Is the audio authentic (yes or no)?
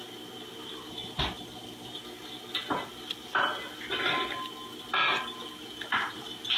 yes